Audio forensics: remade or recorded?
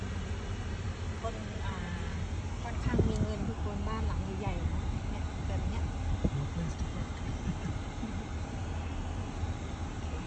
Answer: recorded